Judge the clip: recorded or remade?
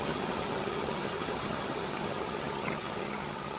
remade